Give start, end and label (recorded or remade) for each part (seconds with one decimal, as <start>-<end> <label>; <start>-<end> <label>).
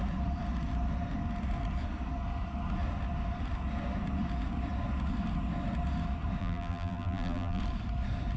0.0-6.4 recorded; 6.4-7.6 remade; 7.6-8.4 recorded